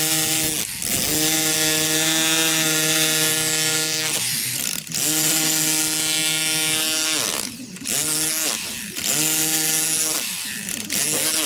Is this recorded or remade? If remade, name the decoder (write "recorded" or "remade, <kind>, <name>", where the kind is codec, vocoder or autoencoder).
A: recorded